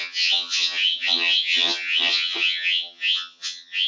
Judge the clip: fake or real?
fake